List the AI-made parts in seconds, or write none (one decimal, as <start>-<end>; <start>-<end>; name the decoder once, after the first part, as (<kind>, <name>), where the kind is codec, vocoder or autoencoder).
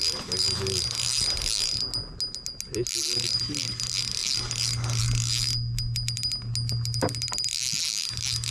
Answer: none